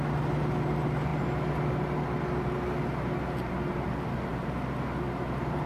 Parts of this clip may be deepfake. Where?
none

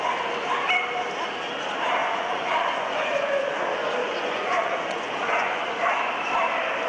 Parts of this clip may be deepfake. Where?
2.0-3.4; 4.0-5.6

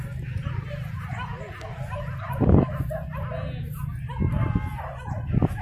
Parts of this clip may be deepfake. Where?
none